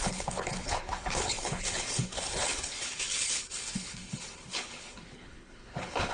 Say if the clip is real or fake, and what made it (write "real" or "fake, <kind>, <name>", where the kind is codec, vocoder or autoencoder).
fake, codec, HILCodec